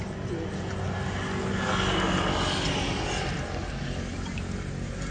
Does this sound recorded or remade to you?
recorded